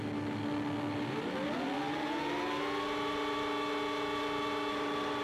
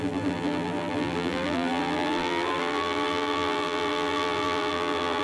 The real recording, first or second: first